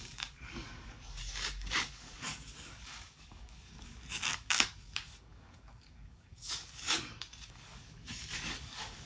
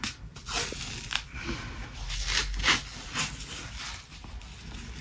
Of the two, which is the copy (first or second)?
first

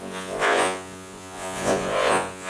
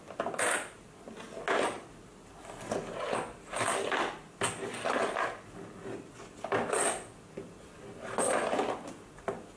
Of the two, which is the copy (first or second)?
first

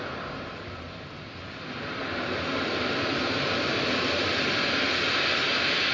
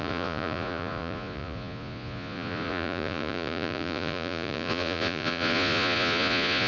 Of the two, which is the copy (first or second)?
second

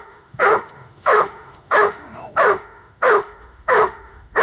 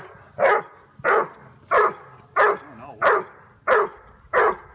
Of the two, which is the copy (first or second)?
first